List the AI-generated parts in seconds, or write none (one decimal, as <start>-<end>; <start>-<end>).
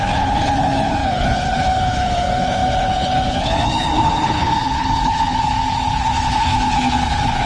0.0-7.5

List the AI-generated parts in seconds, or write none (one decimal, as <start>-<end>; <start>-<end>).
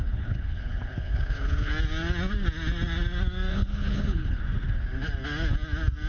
0.0-1.7; 3.5-4.4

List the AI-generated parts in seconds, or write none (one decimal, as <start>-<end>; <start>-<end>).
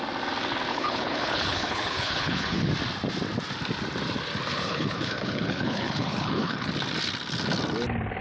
0.7-2.7; 4.5-6.7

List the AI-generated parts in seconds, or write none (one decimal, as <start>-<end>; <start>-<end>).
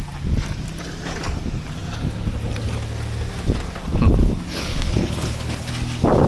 4.7-5.7